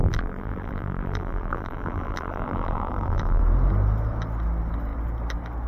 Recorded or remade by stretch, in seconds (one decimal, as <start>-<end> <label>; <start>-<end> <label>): 0.0-3.4 remade; 3.4-5.7 recorded